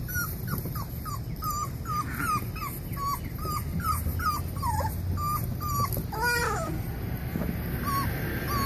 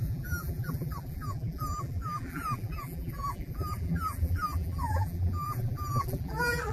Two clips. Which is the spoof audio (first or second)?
second